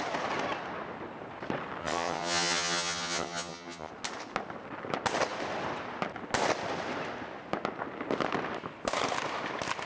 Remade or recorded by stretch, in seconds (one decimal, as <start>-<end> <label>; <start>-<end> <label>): 0.0-1.8 recorded; 1.8-3.9 remade; 3.9-9.9 recorded